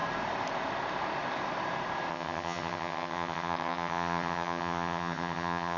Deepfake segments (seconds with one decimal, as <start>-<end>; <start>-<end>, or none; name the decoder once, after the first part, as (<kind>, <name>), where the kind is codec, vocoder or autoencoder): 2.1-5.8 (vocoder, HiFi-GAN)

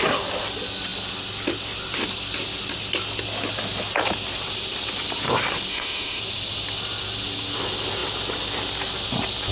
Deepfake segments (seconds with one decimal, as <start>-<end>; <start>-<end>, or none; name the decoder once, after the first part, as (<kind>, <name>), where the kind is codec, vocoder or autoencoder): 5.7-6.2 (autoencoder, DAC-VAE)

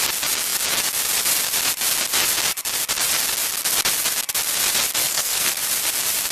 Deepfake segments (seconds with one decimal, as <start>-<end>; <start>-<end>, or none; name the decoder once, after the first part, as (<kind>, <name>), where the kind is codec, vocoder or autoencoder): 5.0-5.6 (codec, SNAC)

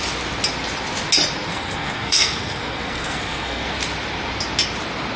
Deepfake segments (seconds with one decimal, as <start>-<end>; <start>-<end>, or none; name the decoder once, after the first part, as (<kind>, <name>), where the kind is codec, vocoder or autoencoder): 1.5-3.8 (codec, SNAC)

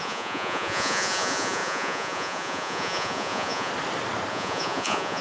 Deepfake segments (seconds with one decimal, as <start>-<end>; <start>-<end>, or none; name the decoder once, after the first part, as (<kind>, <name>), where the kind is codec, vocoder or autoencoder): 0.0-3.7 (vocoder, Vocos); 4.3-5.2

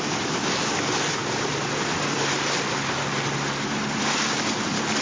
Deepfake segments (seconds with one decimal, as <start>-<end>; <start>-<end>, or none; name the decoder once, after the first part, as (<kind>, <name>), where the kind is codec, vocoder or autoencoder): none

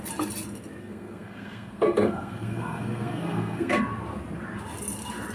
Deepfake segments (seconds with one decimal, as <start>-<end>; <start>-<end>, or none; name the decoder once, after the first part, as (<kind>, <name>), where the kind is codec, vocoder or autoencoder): 0.8-3.8 (codec, SNAC)